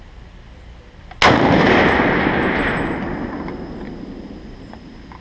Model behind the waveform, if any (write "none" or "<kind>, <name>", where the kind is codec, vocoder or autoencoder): none